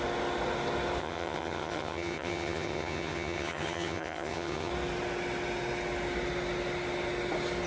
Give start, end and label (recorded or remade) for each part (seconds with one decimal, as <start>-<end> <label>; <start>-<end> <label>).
0.0-1.0 recorded; 1.0-4.7 remade; 4.7-7.7 recorded